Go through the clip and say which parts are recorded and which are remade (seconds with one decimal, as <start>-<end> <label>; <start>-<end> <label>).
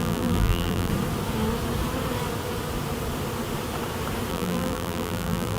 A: 0.0-0.9 remade; 0.9-4.3 recorded; 4.3-5.6 remade